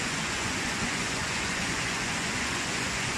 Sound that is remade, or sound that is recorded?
remade